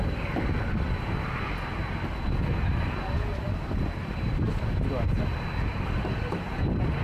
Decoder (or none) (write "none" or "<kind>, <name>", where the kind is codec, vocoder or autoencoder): none